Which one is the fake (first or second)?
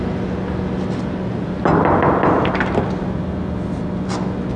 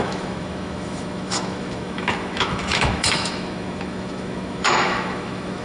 second